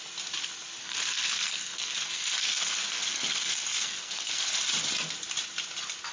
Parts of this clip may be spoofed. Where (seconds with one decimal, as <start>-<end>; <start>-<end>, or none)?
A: 0.8-4.5